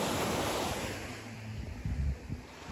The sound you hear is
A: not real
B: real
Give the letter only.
B